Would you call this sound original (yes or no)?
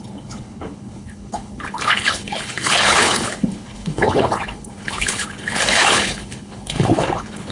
no